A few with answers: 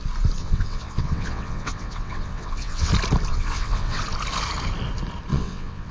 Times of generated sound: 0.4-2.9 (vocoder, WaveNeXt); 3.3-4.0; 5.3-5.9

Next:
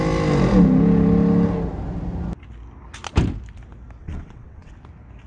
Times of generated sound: 4.0-4.7 (vocoder, WaveNeXt)

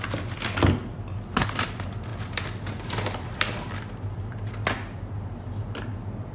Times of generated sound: none

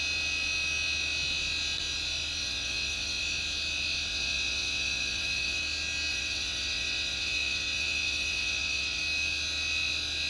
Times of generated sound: 2.4-3.2 (vocoder, WaveNeXt); 4.1-5.6; 6.1-9.0

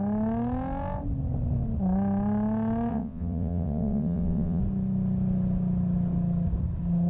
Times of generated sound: 2.9-4.6 (vocoder, WaveNeXt)

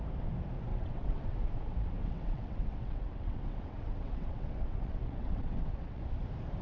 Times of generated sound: 0.7-1.4 (vocoder, WaveNeXt); 2.0-6.0